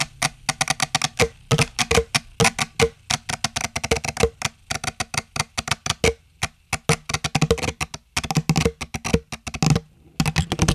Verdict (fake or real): real